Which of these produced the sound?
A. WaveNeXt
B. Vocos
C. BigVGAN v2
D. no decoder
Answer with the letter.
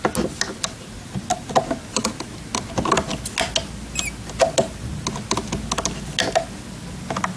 D